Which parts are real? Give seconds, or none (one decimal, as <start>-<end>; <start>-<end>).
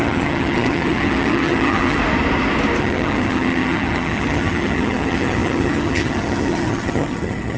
2.0-2.8